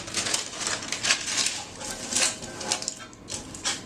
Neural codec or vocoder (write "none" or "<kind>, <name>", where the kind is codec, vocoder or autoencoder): none